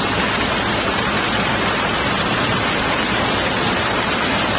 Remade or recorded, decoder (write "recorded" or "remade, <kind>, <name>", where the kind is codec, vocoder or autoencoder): remade, vocoder, BigVGAN v2